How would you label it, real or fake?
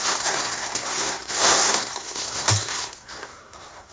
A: fake